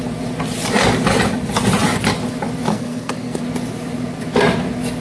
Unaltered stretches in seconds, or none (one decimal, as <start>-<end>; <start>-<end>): 0.0-2.7; 3.4-5.0